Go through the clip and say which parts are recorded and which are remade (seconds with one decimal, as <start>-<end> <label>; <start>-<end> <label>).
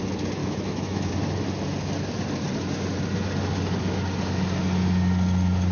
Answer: 0.0-0.4 recorded; 0.4-1.1 remade; 1.1-5.7 recorded